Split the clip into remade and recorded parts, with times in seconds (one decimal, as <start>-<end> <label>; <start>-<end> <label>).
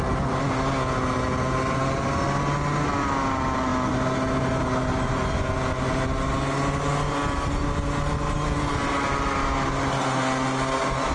0.0-11.1 recorded